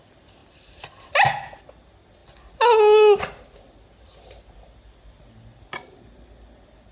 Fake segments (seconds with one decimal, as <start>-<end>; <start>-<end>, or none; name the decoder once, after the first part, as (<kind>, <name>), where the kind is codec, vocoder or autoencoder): none